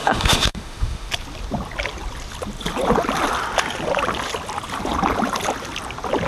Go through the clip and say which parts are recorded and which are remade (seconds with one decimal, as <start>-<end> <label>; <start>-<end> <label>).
0.0-1.1 remade; 1.1-6.3 recorded